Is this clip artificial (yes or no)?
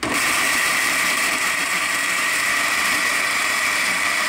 yes